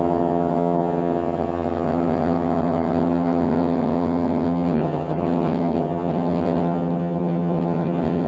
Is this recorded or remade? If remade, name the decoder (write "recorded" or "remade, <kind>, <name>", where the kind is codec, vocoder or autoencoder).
remade, vocoder, HiFi-GAN